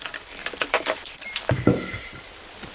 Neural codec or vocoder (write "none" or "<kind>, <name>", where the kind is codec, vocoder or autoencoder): vocoder, BigVGAN v2